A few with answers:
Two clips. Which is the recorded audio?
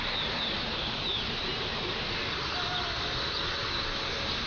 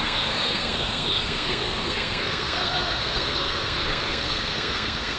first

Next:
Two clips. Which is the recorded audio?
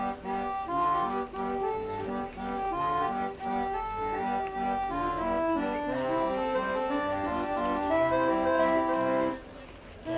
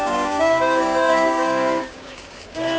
first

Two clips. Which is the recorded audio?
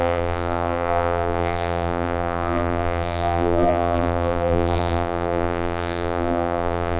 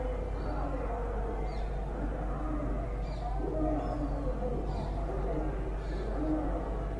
second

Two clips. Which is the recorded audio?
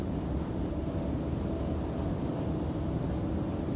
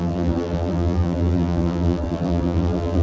first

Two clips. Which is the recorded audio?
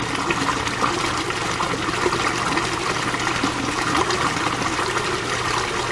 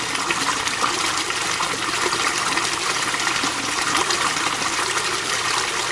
first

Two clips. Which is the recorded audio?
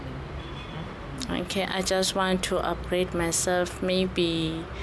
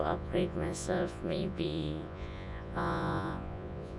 first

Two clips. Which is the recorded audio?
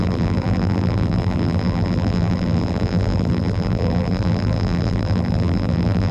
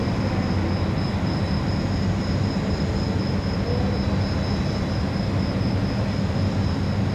second